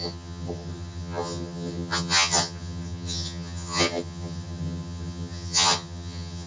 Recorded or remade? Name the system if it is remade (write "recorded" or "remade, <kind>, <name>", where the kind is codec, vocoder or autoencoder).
remade, vocoder, HiFi-GAN